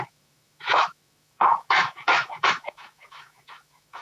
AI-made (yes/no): yes